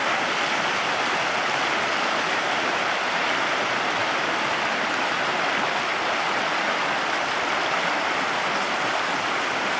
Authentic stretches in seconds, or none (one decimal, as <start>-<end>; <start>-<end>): 0.0-9.8